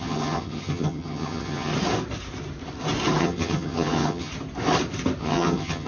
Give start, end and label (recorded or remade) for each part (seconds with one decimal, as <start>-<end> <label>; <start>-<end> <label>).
0.0-1.7 remade; 1.7-3.2 recorded; 3.2-4.3 remade; 4.3-5.2 recorded; 5.2-5.9 remade